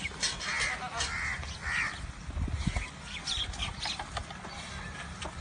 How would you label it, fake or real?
real